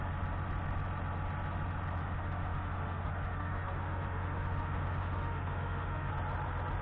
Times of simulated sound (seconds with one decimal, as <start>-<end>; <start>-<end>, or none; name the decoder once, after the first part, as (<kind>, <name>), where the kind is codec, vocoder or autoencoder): 2.0-6.1 (autoencoder, DAC-VAE)